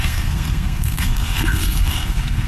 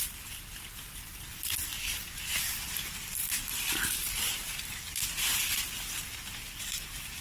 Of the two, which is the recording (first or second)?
second